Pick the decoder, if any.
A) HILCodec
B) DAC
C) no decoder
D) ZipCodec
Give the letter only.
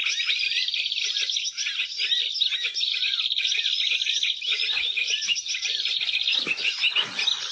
C